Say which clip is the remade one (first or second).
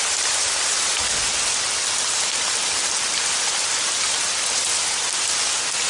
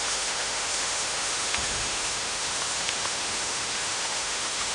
second